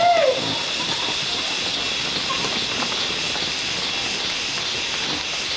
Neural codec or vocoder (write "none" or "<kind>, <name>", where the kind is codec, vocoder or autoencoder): none